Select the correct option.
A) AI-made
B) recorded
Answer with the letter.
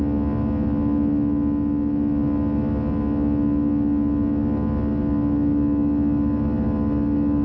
B